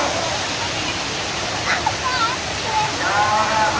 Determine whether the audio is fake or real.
real